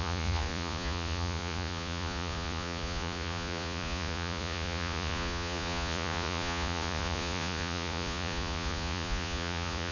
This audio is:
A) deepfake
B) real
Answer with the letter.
A